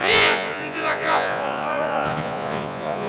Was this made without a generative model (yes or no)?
no